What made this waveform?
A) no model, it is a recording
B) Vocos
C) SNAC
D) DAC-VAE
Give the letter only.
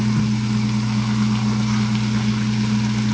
A